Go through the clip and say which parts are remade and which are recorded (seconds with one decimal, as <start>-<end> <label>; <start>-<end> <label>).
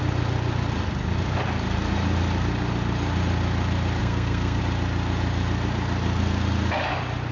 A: 0.0-4.0 recorded; 4.0-4.6 remade; 4.6-7.3 recorded